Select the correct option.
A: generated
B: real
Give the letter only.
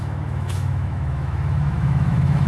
A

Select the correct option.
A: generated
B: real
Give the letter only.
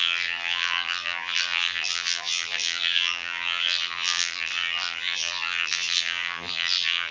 A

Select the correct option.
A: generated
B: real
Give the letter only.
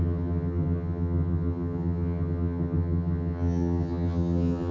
A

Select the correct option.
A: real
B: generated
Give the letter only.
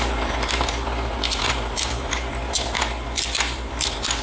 A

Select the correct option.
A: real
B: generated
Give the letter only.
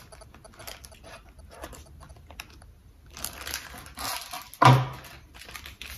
A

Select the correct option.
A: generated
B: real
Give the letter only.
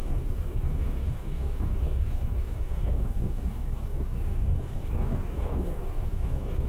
A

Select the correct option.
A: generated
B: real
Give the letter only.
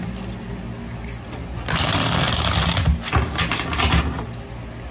B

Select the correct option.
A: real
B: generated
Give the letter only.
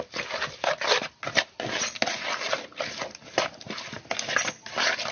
A